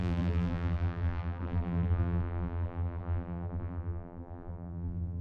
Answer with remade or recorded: remade